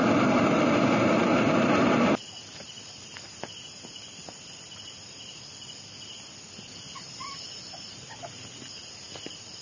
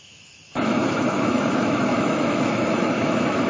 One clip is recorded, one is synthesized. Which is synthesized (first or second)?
second